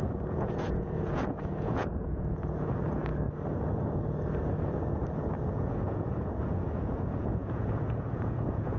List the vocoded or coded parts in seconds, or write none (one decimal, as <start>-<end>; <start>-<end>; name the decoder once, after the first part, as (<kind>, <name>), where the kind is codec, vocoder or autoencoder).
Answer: 0.0-3.1 (vocoder, Vocos); 5.6-8.8